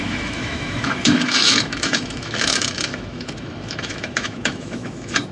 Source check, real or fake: fake